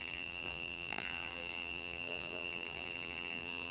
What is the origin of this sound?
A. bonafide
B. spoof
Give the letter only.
B